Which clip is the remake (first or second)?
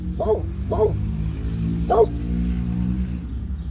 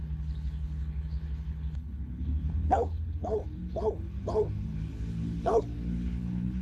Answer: second